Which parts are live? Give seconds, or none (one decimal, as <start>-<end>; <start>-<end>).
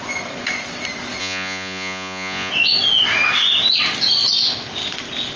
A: 0.0-1.2; 2.5-5.4